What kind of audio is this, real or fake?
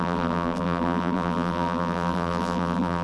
fake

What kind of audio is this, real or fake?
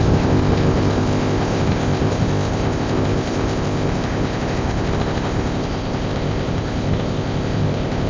fake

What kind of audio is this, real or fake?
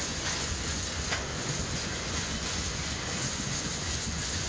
fake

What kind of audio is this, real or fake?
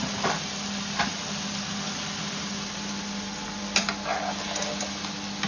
real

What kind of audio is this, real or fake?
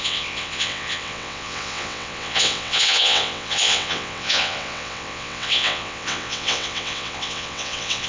fake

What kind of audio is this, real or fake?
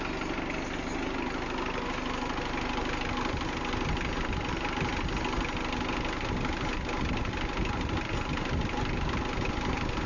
real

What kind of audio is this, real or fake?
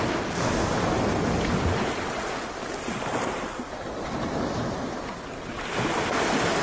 real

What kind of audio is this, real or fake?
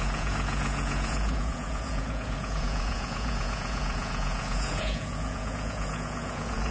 fake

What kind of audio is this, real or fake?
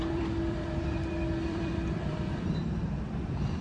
fake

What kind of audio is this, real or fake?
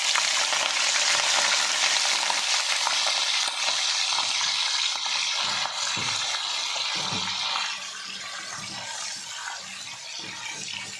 real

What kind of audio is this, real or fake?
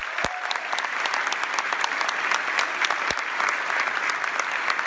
real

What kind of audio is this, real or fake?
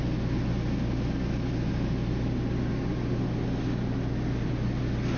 real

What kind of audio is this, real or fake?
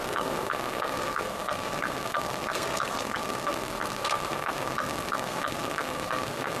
fake